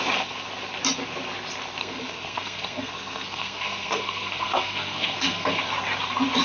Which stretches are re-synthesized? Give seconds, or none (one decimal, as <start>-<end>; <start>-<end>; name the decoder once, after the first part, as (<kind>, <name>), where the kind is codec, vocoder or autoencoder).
1.8-5.6 (codec, SNAC)